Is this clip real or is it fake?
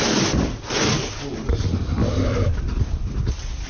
real